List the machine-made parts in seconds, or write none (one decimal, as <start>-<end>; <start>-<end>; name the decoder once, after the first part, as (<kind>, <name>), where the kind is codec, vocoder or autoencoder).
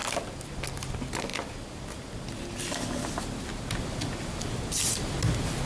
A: 0.0-0.5 (vocoder, BigVGAN v2)